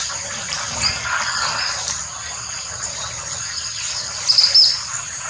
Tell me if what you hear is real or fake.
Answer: real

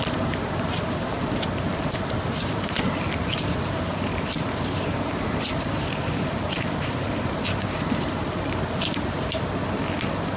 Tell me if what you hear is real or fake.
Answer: fake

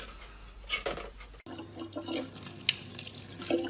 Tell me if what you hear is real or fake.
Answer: real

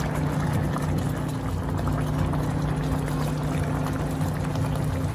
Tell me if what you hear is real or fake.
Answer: real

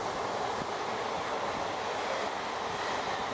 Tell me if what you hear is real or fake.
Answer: real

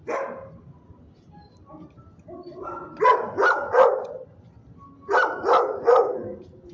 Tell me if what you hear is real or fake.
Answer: real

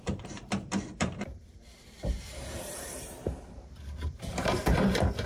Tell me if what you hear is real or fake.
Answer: fake